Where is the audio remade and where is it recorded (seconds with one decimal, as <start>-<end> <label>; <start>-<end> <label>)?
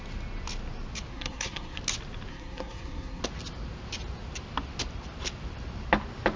0.0-1.1 recorded; 1.1-1.8 remade; 1.8-2.3 recorded; 2.3-3.2 remade; 3.2-6.4 recorded